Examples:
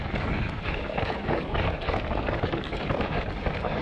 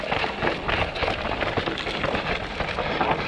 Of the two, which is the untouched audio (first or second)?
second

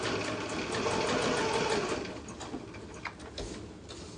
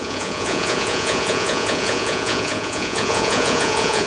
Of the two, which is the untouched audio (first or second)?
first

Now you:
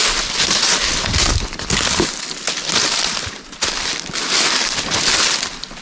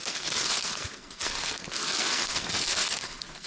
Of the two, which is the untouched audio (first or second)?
first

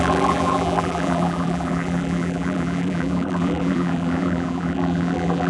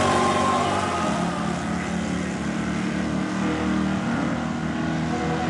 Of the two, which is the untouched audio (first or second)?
second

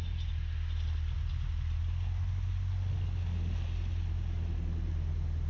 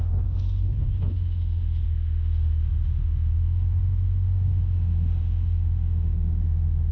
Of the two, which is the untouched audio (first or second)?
first